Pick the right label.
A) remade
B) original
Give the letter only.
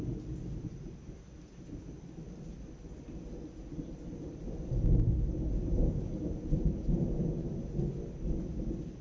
B